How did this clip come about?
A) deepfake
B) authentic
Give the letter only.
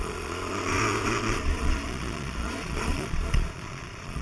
A